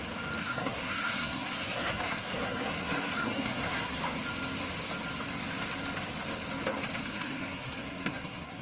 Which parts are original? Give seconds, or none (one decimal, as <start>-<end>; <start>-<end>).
0.0-0.4; 4.0-7.0